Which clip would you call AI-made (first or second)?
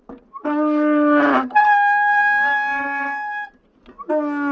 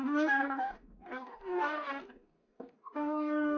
second